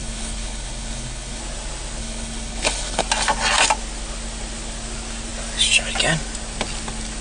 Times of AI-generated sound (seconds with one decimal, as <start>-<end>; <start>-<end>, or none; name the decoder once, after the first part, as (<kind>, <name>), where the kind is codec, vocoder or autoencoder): 0.0-1.4 (codec, HILCodec); 2.0-3.0

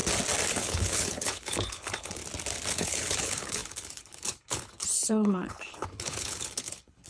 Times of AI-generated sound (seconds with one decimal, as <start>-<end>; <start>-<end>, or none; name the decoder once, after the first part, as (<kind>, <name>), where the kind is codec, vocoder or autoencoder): 0.5-2.2 (codec, HILCodec); 2.7-7.1

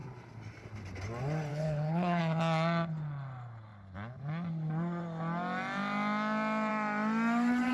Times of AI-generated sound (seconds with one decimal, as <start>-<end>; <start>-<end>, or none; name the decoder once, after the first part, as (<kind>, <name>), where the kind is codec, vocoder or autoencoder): 1.5-2.2 (codec, HILCodec)

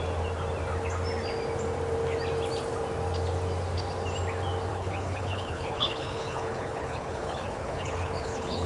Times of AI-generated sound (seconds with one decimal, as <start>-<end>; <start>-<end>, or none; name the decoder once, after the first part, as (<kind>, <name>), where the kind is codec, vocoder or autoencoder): 4.7-8.7 (codec, HILCodec)

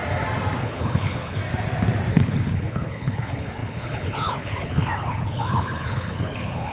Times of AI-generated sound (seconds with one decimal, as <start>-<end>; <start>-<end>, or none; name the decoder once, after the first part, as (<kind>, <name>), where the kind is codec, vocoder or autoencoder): 0.6-1.4 (codec, HILCodec); 2.1-6.7